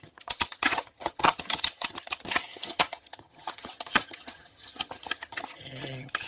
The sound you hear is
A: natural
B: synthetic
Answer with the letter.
B